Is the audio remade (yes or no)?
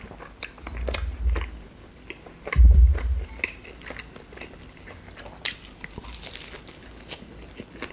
no